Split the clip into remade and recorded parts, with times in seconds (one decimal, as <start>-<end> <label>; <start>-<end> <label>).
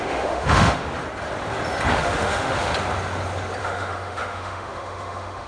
0.0-0.8 remade; 0.8-1.9 recorded; 1.9-2.7 remade; 2.7-3.6 recorded; 3.6-5.5 remade